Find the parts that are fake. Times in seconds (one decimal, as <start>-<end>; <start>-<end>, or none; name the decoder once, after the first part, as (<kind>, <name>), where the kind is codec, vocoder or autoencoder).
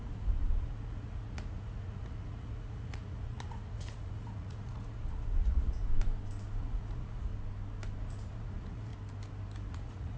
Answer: 0.0-5.8 (vocoder, Vocos); 6.6-7.3; 8.0-8.9; 9.7-10.2